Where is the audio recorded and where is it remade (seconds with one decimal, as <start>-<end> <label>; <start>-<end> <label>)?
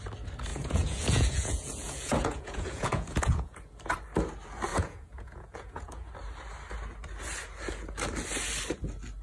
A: 0.0-0.5 recorded; 0.5-3.6 remade; 3.6-4.7 recorded; 4.7-6.1 remade; 6.1-9.2 recorded